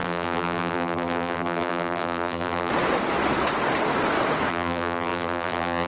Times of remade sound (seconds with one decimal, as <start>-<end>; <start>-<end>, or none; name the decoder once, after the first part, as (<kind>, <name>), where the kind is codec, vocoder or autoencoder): 0.0-2.7 (vocoder, BigVGAN v2); 4.5-5.9